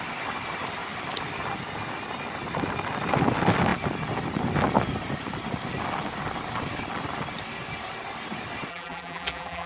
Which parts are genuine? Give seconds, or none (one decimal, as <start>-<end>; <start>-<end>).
0.0-8.7